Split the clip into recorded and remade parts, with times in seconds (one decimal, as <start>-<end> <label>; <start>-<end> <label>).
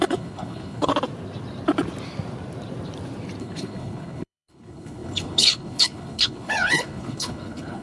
0.0-0.9 remade; 0.9-3.4 recorded; 3.4-7.8 remade